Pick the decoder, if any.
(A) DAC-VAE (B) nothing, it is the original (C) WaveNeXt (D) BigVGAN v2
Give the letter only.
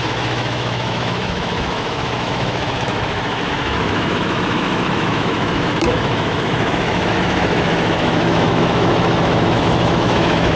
A